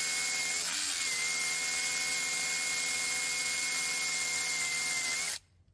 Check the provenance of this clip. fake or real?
real